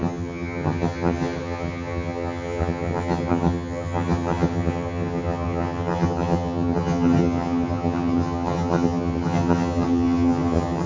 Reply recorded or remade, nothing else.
remade